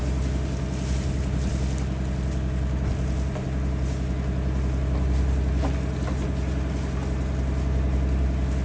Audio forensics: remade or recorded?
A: recorded